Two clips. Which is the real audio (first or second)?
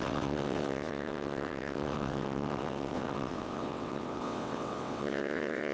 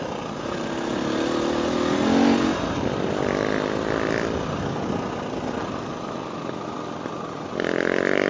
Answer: second